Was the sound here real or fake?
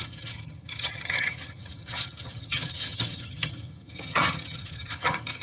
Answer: fake